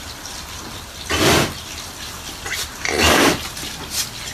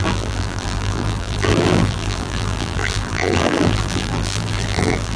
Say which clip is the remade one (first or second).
second